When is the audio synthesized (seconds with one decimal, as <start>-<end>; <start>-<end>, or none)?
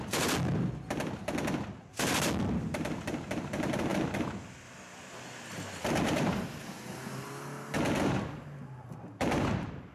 none